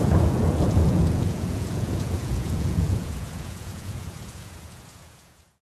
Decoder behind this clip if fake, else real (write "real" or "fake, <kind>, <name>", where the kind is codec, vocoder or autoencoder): fake, vocoder, Vocos